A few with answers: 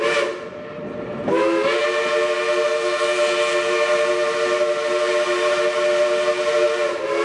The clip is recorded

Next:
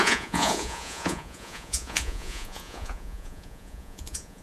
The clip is remade